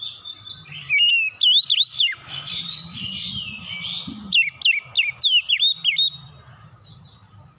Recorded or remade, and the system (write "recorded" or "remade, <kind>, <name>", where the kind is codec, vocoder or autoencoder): recorded